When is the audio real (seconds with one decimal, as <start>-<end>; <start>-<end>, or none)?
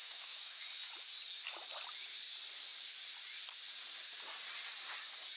0.6-5.4